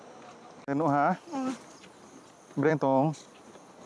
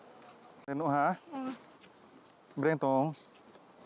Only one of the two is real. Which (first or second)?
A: second